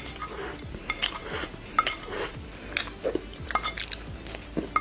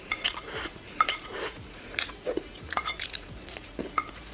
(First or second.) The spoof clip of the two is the second